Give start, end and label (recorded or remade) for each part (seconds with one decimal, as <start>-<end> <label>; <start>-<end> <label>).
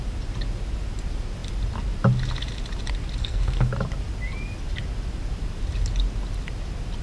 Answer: 0.0-3.2 recorded; 3.2-3.7 remade; 3.7-7.0 recorded